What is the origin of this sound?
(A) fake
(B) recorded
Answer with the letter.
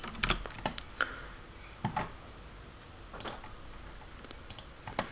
B